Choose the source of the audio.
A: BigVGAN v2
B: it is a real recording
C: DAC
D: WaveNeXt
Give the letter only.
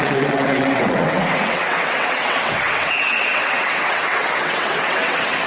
D